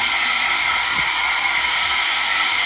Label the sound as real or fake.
real